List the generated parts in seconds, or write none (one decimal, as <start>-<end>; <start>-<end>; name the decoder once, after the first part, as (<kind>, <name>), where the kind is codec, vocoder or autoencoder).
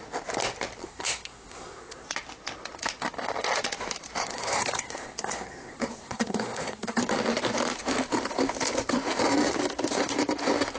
0.8-2.1 (codec, SNAC); 4.3-7.0